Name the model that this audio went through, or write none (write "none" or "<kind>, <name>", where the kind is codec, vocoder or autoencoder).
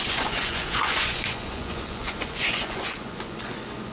vocoder, Vocos